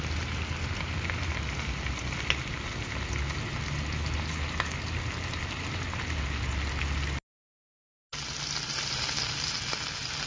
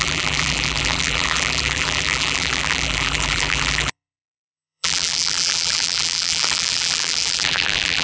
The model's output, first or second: second